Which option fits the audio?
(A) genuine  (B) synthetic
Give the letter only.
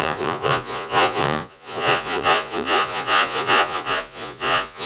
B